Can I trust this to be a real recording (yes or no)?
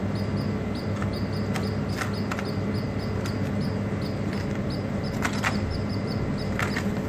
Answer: yes